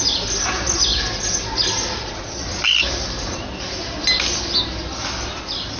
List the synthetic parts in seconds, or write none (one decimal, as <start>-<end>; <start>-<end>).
none